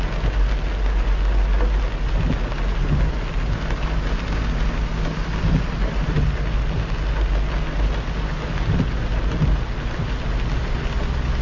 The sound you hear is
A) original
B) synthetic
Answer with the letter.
A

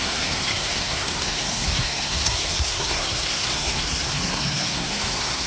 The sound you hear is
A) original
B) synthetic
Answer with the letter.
B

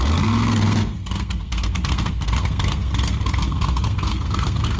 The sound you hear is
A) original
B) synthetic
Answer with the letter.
B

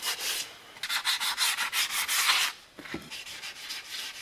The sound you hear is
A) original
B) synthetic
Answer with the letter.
A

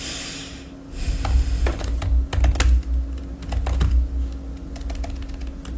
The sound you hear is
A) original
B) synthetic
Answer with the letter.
A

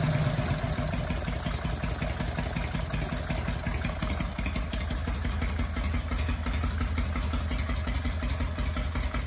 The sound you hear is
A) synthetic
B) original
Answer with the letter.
B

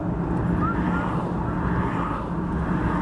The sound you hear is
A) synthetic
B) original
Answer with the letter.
B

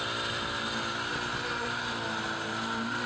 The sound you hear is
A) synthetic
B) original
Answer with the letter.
B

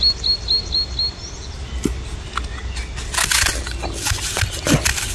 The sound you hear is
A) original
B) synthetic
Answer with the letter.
A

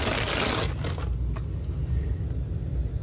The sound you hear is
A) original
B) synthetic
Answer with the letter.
A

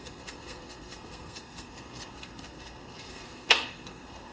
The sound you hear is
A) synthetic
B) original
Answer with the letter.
A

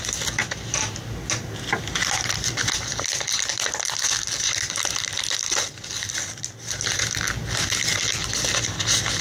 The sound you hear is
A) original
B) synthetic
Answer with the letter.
A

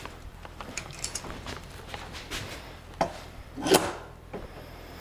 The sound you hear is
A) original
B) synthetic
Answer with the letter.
B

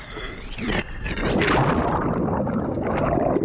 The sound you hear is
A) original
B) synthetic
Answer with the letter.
A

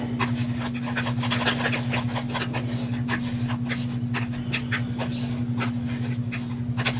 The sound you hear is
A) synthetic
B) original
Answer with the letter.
B